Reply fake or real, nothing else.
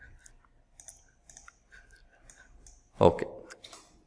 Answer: real